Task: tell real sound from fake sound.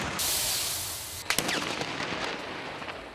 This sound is real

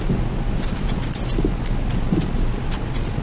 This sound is real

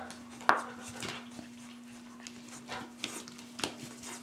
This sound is real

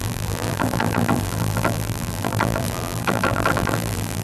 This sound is fake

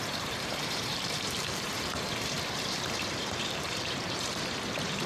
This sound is fake